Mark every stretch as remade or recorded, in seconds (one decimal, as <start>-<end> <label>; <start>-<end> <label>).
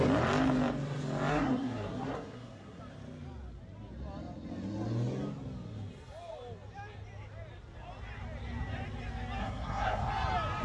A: 0.0-1.3 recorded; 1.3-2.8 remade; 2.8-9.4 recorded; 9.4-10.1 remade; 10.1-10.6 recorded